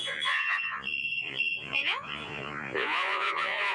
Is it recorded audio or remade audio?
remade